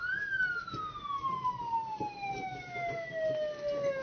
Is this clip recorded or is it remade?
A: recorded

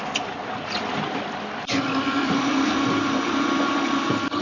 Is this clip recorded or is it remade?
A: remade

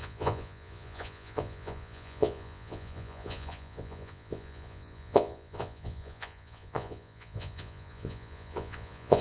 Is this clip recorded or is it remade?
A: remade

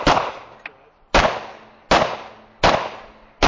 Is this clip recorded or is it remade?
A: recorded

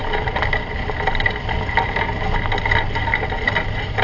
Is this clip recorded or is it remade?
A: recorded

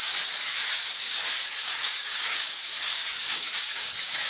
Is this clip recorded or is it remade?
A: remade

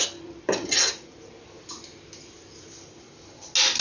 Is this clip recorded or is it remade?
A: recorded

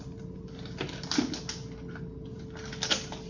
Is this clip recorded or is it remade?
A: recorded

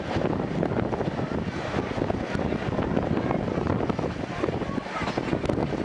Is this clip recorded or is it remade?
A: recorded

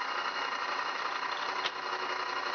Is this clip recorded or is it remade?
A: recorded